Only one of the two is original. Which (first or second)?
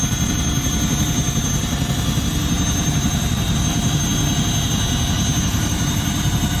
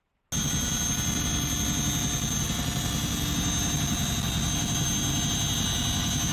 second